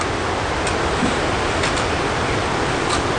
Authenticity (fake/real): real